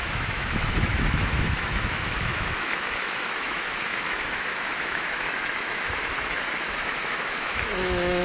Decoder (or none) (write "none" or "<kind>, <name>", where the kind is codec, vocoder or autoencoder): autoencoder, DAC-VAE